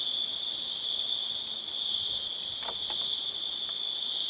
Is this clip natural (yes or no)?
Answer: yes